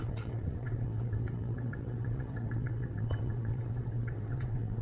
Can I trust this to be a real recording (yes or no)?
no